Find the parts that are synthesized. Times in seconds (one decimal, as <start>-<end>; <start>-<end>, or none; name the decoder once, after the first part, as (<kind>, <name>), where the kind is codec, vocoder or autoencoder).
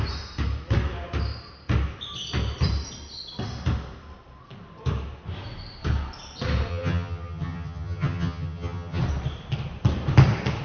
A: 6.7-9.0 (vocoder, HiFi-GAN)